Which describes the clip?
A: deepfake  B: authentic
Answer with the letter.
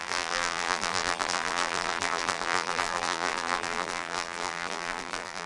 A